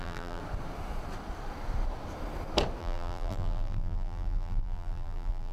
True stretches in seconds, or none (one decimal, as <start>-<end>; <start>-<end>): 0.4-2.8